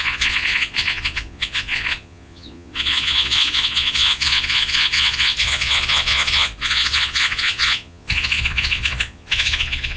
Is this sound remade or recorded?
remade